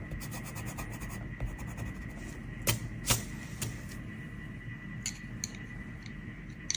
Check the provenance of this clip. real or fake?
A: real